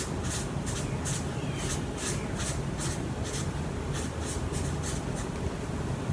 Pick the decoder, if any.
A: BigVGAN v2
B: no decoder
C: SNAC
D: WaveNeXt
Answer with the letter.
B